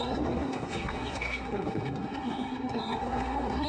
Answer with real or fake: fake